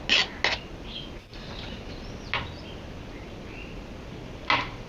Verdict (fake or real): real